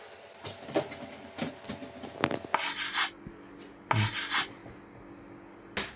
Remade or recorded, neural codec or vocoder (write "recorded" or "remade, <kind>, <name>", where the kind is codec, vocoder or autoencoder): recorded